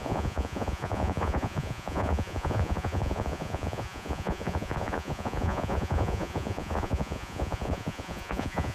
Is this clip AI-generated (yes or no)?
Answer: yes